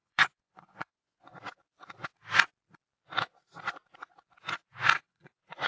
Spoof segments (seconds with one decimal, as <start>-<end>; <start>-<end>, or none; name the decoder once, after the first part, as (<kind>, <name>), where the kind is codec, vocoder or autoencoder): 0.0-1.4 (vocoder, Vocos); 5.0-5.7